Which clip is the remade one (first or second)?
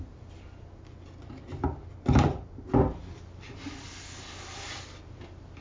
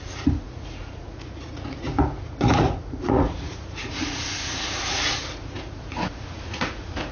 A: second